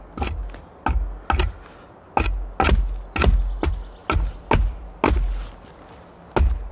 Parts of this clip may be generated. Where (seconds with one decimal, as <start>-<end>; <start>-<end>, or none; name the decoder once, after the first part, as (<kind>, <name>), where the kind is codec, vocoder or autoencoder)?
none